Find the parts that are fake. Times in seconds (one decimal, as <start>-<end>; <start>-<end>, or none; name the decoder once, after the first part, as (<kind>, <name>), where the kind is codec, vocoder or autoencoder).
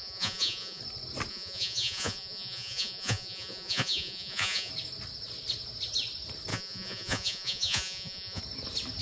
0.0-0.8 (vocoder, Vocos); 1.3-4.7; 6.5-8.4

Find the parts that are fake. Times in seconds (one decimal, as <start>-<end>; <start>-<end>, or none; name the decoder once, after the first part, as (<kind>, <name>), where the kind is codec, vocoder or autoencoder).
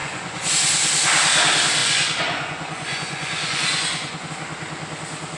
0.0-0.5 (vocoder, Vocos); 1.8-4.3